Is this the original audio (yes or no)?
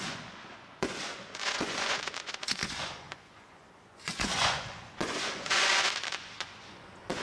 no